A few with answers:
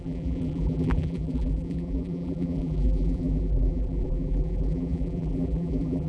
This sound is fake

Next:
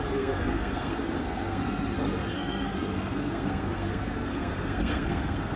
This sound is fake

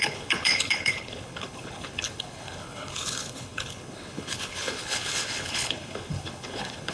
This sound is fake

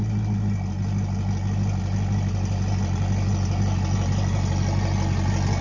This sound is real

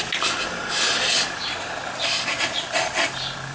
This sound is real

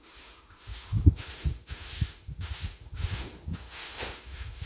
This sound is fake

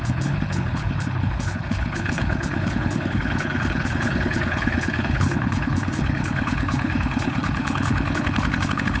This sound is fake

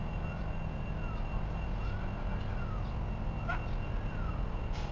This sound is real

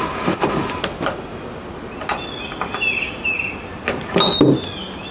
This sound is real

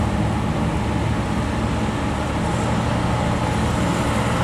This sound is real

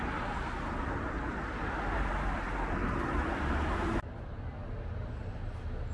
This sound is real